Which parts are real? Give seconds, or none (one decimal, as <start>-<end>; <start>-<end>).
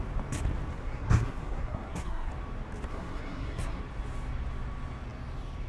0.0-0.7; 2.3-2.9; 3.8-5.7